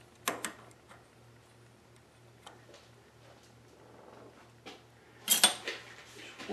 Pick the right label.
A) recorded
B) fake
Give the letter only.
A